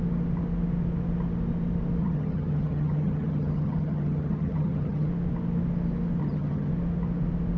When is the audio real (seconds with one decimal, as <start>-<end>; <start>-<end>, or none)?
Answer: 0.0-2.0; 5.1-6.2; 6.7-7.6